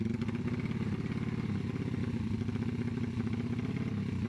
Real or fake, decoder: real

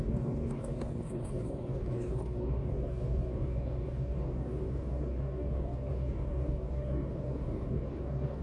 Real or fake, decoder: fake, codec, DAC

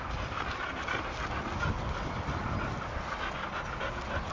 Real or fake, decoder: real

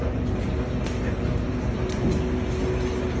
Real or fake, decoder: real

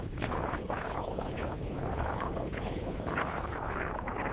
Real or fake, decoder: fake, codec, HILCodec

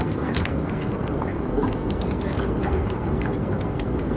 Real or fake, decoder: fake, codec, SNAC